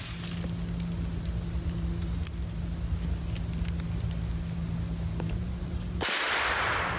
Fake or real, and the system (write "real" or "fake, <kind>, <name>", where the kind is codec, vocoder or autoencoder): real